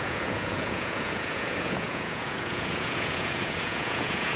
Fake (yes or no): yes